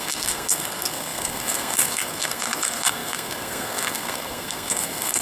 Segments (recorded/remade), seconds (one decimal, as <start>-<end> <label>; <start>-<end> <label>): 0.0-5.2 remade